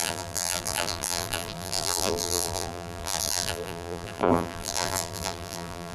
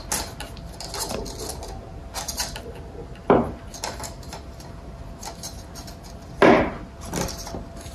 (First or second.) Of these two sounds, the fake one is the first